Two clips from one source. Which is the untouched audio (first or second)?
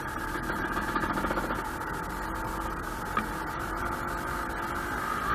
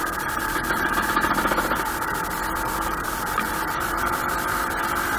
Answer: first